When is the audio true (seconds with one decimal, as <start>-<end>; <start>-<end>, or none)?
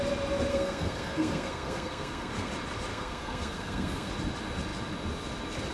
0.0-0.5; 2.5-2.9; 4.1-5.7